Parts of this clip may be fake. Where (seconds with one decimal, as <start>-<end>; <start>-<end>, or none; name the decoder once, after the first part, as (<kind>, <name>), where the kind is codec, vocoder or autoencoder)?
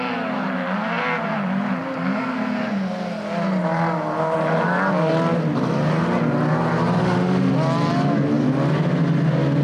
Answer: 7.0-7.5 (autoencoder, DAC-VAE)